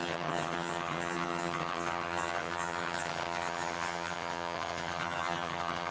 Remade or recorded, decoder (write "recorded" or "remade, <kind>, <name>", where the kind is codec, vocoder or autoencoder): remade, vocoder, HiFi-GAN